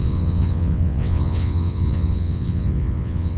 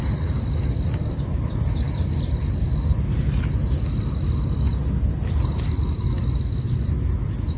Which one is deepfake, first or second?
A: first